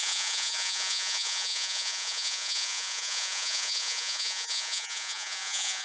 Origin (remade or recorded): remade